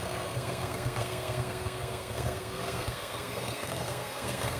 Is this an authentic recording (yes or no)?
no